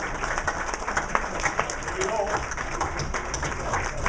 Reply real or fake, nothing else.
real